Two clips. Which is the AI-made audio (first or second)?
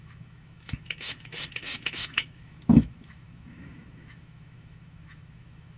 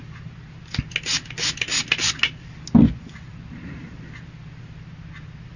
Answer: first